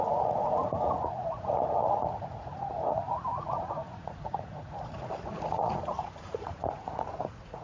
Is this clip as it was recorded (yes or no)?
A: no